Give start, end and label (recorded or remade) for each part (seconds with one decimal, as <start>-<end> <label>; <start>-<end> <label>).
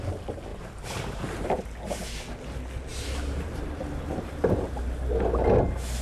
0.0-0.5 recorded; 0.5-1.6 remade; 1.6-2.9 recorded; 2.9-4.7 remade; 4.7-6.0 recorded